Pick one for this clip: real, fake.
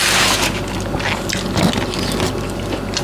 real